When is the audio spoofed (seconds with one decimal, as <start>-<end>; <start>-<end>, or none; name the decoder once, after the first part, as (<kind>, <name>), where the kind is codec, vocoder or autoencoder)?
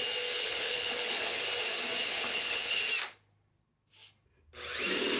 0.4-1.4 (codec, HILCodec); 2.0-2.8